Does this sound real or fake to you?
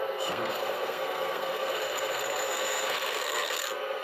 fake